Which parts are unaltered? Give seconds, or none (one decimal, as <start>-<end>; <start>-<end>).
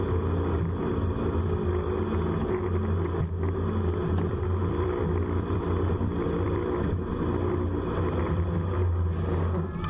0.0-4.0; 7.8-9.9